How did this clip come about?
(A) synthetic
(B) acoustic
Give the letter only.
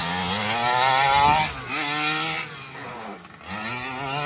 B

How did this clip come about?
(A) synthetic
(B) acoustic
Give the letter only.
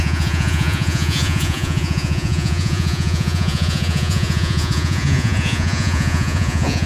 A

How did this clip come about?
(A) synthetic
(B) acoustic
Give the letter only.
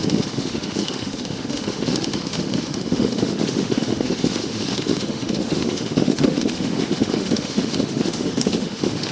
A